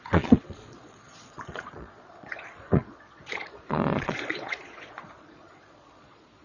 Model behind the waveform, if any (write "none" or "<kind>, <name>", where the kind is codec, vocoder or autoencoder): vocoder, Vocos